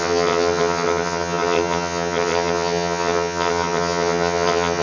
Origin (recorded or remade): remade